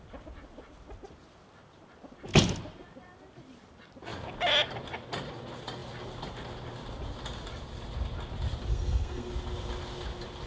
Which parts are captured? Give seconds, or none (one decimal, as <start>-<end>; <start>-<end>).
0.0-8.7; 9.3-10.5